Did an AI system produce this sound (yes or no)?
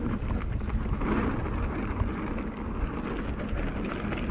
no